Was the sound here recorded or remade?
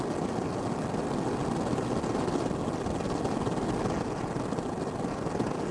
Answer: recorded